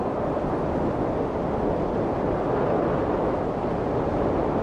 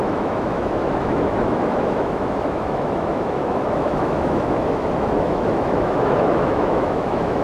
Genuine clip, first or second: first